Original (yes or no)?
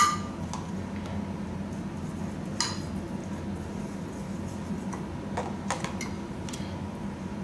yes